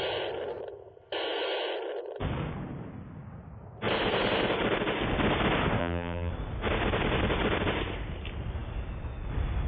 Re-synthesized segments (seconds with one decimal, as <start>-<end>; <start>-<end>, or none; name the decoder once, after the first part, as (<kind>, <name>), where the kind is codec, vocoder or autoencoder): 5.8-6.3 (vocoder, BigVGAN v2)